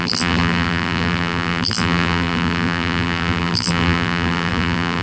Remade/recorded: remade